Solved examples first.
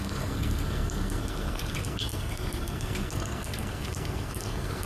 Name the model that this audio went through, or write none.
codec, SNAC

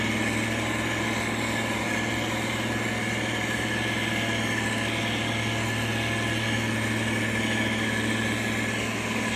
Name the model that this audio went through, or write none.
none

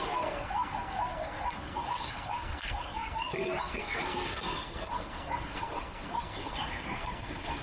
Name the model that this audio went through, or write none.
codec, SNAC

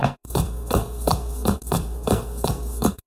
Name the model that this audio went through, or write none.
codec, SNAC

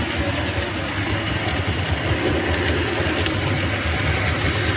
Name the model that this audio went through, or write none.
none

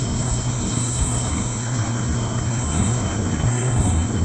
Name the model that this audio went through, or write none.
codec, SNAC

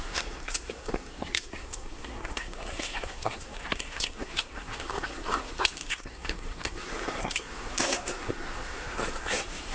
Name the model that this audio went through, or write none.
codec, SNAC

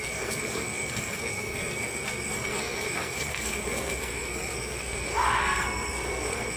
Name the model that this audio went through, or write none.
codec, SNAC